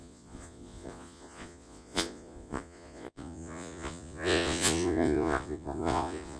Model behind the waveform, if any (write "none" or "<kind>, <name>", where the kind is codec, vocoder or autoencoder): vocoder, Vocos